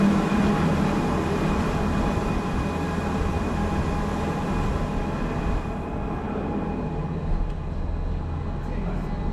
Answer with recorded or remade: recorded